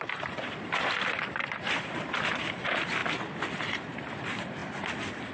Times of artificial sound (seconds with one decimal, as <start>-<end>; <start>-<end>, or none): 0.0-3.0; 3.6-4.6

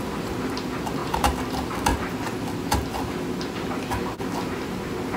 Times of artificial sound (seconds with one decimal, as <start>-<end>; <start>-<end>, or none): none

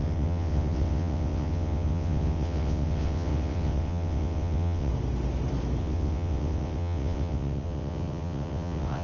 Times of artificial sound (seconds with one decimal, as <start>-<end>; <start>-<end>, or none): 0.0-4.9; 5.8-9.0

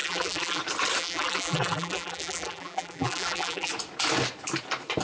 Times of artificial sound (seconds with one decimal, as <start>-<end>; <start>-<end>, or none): 0.0-0.6; 1.0-3.7

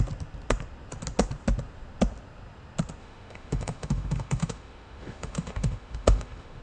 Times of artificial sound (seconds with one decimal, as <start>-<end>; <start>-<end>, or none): 3.0-6.6

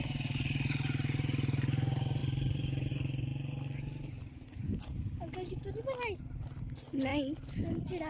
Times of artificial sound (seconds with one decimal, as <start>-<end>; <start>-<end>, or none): none